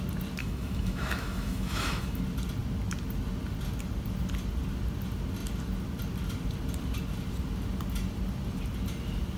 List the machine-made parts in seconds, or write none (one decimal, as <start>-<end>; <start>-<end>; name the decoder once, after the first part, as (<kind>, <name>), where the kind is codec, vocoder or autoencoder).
0.4-2.2 (autoencoder, DAC-VAE)